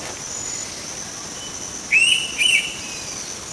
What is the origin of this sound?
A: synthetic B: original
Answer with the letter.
B